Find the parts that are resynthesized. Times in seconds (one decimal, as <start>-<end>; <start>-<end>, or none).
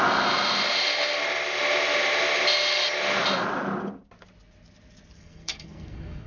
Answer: 5.2-6.3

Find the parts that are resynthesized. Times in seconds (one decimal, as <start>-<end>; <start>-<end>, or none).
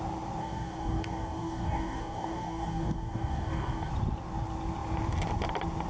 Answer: 0.4-3.9